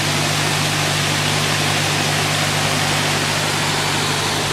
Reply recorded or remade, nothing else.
recorded